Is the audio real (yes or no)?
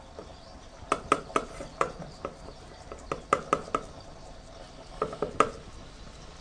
yes